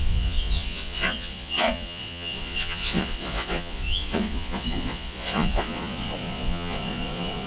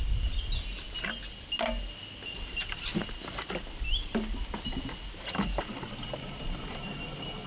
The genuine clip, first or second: second